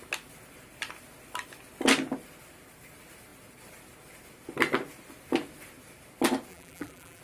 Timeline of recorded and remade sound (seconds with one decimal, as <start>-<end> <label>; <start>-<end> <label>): 0.0-6.5 recorded; 6.5-7.2 remade